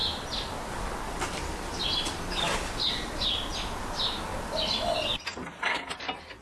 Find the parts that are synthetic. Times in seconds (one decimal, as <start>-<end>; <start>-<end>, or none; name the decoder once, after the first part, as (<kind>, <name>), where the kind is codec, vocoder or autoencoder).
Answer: none